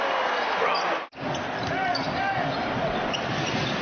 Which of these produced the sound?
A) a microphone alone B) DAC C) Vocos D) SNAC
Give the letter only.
A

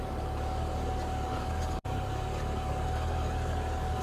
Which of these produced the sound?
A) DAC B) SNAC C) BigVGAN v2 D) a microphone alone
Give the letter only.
A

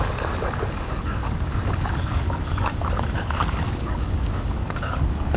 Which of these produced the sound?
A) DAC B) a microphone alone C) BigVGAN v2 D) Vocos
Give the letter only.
A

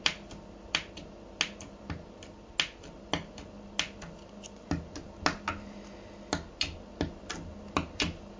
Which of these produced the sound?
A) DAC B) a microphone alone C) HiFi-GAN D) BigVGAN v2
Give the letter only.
B